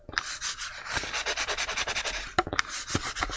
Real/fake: real